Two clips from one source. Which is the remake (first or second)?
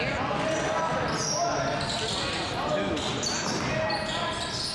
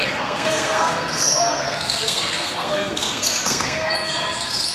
second